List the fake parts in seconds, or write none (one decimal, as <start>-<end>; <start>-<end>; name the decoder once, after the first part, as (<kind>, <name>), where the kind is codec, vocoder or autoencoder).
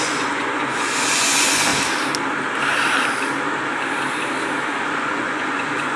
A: 0.0-1.7 (vocoder, Vocos); 4.8-6.0